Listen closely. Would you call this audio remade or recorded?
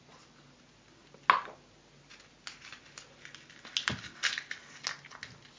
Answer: recorded